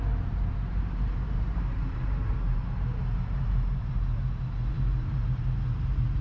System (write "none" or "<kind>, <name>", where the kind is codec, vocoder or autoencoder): vocoder, BigVGAN v2